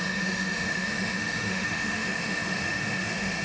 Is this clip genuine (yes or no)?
no